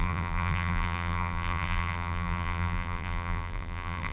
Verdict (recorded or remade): remade